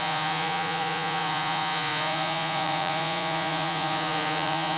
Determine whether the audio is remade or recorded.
remade